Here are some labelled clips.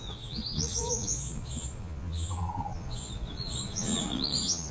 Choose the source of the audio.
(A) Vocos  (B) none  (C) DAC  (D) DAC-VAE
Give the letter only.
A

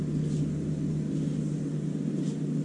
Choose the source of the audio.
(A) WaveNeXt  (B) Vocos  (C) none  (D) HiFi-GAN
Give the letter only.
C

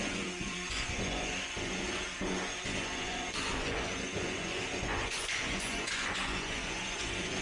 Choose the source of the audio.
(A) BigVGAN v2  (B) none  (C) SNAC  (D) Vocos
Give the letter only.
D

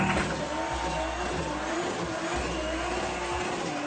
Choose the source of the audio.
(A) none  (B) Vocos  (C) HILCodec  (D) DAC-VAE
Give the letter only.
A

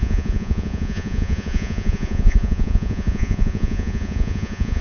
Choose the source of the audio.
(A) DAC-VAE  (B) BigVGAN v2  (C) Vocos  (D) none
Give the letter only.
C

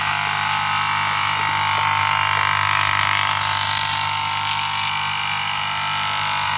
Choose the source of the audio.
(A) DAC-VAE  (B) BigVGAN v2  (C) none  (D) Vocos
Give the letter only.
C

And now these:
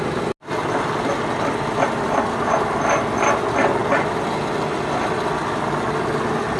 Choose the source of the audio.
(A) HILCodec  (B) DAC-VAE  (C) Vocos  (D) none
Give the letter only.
D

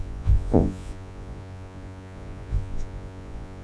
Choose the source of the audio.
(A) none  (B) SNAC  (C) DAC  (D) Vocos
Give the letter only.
D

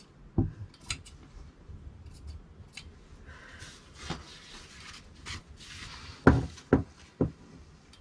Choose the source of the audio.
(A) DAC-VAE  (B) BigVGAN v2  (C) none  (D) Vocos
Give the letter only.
C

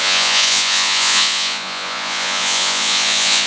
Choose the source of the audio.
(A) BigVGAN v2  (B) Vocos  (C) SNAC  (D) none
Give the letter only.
B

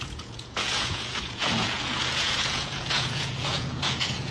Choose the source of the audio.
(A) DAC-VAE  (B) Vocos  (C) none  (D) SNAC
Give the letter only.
B